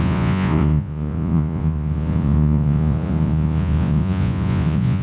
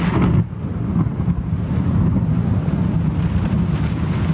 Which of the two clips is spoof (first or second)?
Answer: first